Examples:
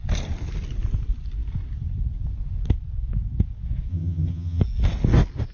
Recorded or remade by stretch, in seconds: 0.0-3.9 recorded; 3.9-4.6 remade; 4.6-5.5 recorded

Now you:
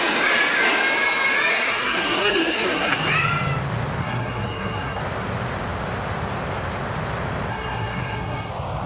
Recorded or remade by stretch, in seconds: 0.0-1.5 recorded; 1.5-3.0 remade; 3.0-4.0 recorded; 4.0-5.0 remade; 5.0-7.5 recorded; 7.5-8.5 remade; 8.5-8.9 recorded

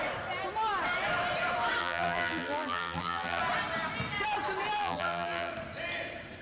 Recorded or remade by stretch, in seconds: 0.0-1.8 recorded; 1.8-3.4 remade; 3.4-4.8 recorded; 4.8-5.5 remade; 5.5-6.4 recorded

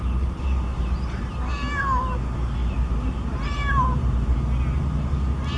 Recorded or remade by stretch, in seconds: 0.0-0.7 recorded; 0.7-1.5 remade; 1.5-2.6 recorded; 2.6-4.4 remade; 4.4-5.6 recorded

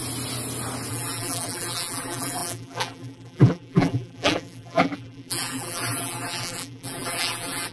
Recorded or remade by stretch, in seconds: 0.0-0.9 recorded; 0.9-7.7 remade

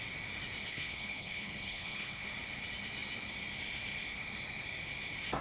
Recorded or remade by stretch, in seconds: 0.0-0.7 recorded; 0.7-2.2 remade; 2.2-5.4 recorded

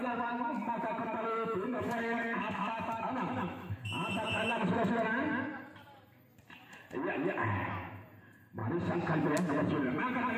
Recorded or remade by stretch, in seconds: 0.0-1.0 recorded; 1.0-4.9 remade; 4.9-10.4 recorded